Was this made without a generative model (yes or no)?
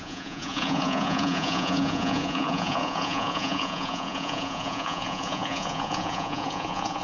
no